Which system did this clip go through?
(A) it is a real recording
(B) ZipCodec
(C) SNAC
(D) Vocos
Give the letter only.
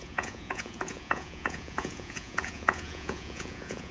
D